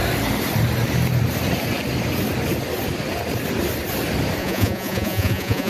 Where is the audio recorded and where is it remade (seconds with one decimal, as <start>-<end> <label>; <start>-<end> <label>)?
0.0-4.4 recorded; 4.4-5.7 remade